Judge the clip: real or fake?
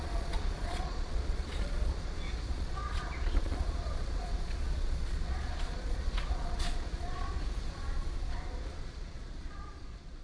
fake